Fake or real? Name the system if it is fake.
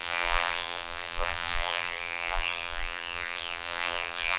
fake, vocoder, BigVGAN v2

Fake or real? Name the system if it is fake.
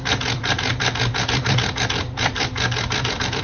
fake, vocoder, BigVGAN v2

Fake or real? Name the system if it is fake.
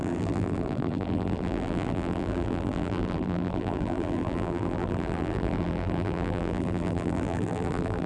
fake, vocoder, BigVGAN v2